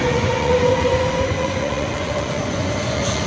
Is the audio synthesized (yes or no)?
yes